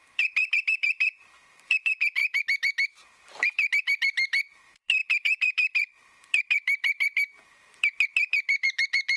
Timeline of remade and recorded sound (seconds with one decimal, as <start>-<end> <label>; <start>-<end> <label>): 0.0-9.2 remade